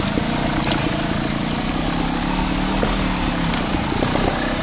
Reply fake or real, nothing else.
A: real